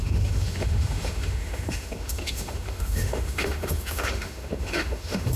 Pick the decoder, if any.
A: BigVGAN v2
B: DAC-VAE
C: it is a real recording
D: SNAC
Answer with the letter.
B